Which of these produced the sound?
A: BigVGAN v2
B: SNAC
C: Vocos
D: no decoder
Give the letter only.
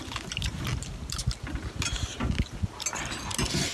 D